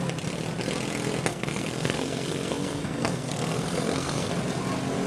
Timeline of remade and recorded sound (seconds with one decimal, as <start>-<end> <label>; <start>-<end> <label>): 0.0-1.3 recorded; 1.3-4.3 remade; 4.3-5.1 recorded